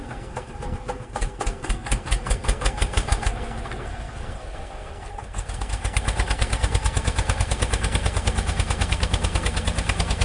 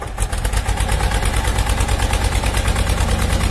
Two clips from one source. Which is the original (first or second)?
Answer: second